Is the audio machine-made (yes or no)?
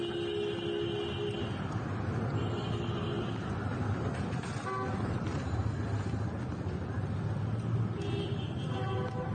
no